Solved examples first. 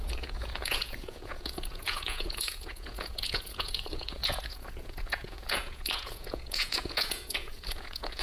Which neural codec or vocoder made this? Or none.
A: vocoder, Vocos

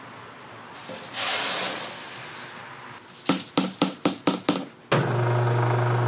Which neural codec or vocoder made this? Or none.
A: none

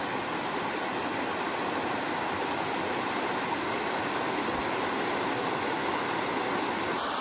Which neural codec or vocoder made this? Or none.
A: none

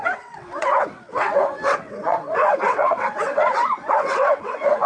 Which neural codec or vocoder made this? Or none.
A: vocoder, WaveNeXt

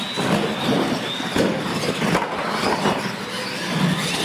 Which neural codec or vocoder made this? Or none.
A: none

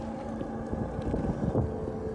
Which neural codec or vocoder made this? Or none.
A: none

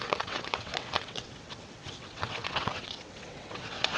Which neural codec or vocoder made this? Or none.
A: vocoder, WaveNeXt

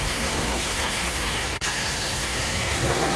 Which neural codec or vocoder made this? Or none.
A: codec, SNAC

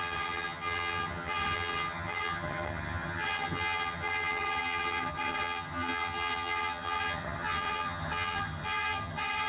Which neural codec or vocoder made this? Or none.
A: vocoder, HiFi-GAN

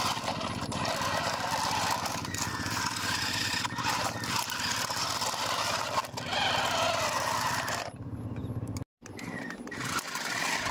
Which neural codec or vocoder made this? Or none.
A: none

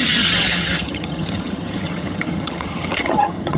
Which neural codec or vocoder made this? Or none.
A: vocoder, HiFi-GAN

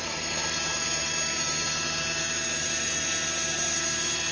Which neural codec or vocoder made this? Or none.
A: vocoder, BigVGAN v2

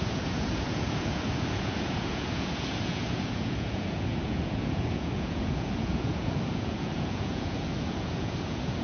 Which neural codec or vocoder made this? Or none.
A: vocoder, Vocos